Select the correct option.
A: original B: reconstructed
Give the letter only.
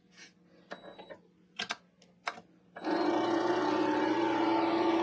A